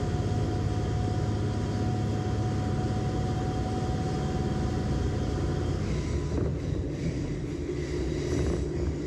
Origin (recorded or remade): recorded